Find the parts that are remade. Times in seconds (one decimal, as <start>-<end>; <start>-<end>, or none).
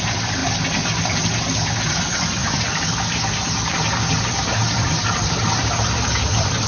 2.4-6.7